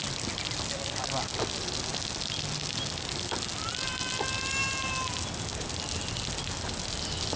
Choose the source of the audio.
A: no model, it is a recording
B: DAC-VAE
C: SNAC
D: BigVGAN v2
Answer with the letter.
A